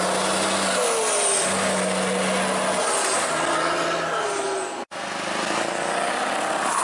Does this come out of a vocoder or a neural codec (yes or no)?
no